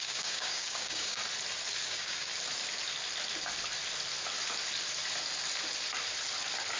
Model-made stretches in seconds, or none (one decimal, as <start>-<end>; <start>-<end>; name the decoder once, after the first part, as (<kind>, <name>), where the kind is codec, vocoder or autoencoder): 0.0-1.2 (codec, DAC); 1.8-2.3